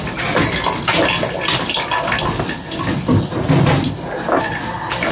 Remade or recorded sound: recorded